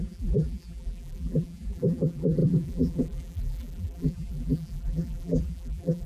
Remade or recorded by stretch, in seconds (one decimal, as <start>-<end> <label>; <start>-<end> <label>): 0.0-6.1 remade